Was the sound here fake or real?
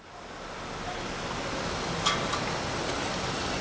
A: real